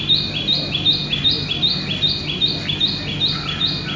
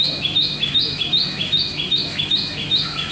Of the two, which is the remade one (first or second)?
second